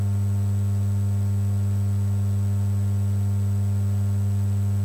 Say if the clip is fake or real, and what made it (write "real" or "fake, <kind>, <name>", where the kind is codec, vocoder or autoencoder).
real